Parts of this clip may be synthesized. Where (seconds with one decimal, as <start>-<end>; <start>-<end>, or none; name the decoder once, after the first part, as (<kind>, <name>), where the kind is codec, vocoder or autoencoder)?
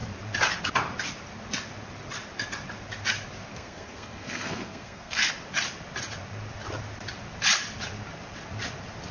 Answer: 3.5-5.3 (codec, SNAC)